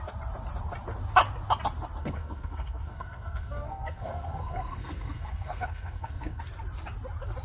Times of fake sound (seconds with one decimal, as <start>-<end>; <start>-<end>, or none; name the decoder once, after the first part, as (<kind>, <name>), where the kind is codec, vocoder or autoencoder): 2.0-6.4 (codec, SNAC)